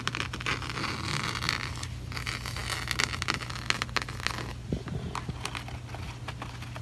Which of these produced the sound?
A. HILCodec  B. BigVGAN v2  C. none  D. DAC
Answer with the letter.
C